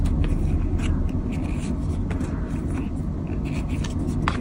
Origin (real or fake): real